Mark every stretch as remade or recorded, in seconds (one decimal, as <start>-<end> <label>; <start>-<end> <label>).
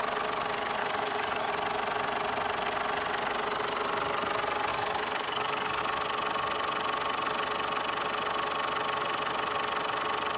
0.0-0.8 recorded; 0.8-1.5 remade; 1.5-4.7 recorded; 4.7-5.8 remade; 5.8-10.4 recorded